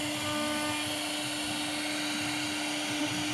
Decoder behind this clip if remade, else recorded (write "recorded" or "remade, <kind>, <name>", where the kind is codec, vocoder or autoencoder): recorded